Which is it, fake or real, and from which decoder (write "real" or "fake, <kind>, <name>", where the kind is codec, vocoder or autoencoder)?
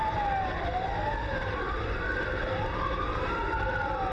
real